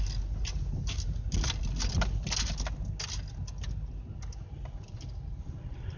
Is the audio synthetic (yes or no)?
no